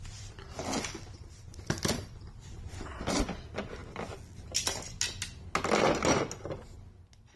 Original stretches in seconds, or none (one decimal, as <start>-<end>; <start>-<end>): 0.0-2.0; 2.5-7.4